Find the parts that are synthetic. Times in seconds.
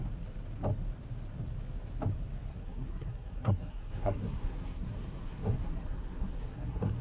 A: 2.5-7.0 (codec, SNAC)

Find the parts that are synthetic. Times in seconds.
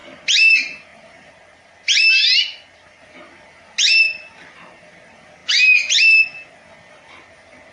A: none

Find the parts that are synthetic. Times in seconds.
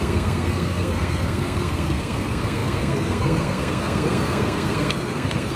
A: 0.0-5.6 (codec, SNAC)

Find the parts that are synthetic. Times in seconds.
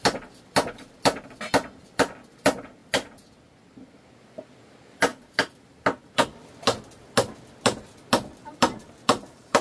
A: 8.4-9.6 (vocoder, BigVGAN v2)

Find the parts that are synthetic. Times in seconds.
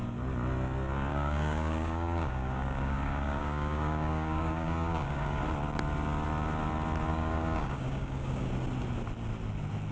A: 1.1-5.4 (codec, DAC); 7.1-8.5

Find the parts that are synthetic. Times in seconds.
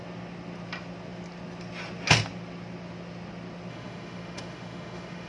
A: 3.7-5.3 (autoencoder, DAC-VAE)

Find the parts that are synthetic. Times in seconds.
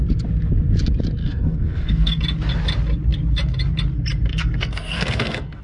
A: 1.2-2.2 (codec, SNAC); 4.3-5.6